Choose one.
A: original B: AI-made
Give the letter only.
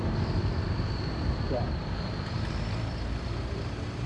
B